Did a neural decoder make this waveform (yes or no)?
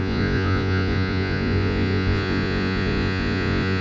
yes